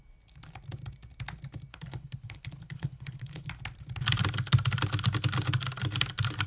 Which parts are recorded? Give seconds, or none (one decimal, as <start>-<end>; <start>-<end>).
0.0-1.7; 3.5-6.5